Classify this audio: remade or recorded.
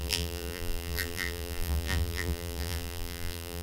remade